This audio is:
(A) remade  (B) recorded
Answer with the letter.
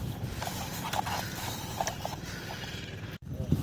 A